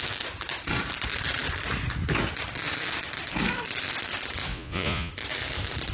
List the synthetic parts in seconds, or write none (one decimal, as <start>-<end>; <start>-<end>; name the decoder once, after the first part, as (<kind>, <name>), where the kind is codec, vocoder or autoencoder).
4.5-5.1 (vocoder, Vocos)